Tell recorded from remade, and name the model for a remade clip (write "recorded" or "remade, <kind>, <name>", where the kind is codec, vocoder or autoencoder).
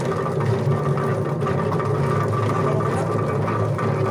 recorded